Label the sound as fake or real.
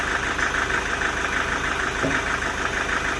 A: real